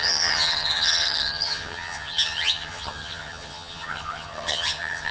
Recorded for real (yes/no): no